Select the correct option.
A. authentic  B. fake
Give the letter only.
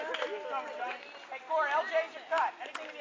A